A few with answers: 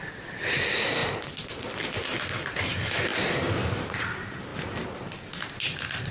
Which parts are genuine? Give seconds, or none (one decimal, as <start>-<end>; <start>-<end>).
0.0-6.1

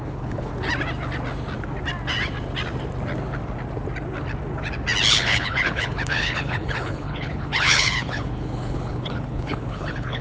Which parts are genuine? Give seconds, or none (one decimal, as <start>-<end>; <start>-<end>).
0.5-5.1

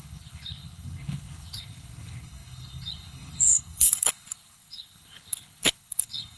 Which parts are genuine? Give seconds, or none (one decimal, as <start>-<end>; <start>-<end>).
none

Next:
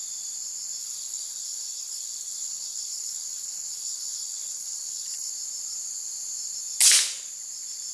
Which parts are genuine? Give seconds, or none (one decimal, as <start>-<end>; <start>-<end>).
0.0-0.8; 5.3-7.9

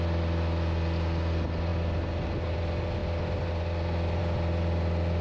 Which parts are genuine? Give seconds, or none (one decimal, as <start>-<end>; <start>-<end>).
0.0-5.2

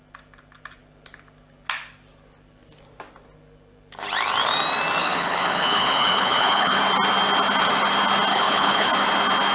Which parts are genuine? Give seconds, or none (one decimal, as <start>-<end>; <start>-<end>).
0.0-5.0; 6.8-8.3; 8.9-9.5

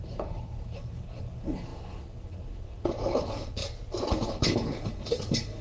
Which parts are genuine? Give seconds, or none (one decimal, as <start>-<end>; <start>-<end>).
3.6-4.1

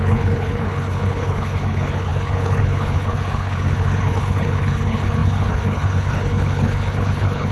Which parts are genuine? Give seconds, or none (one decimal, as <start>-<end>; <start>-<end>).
none